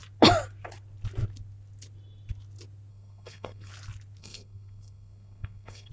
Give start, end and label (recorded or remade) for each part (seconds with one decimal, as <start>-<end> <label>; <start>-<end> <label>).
0.0-2.9 recorded; 2.9-3.7 remade; 3.7-4.2 recorded; 4.2-5.9 remade